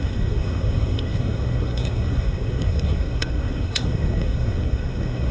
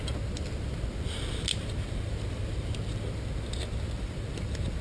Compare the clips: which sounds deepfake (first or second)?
first